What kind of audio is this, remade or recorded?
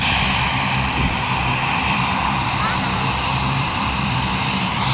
remade